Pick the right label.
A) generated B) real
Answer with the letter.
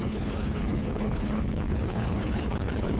A